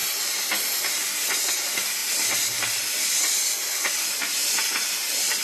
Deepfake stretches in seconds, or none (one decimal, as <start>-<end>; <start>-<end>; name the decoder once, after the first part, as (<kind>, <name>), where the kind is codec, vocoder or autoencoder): 1.4-5.4 (vocoder, BigVGAN v2)